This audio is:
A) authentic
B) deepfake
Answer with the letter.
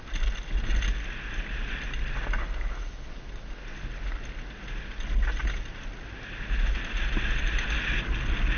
A